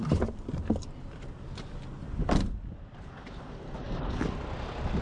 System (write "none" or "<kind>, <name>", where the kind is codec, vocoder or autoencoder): none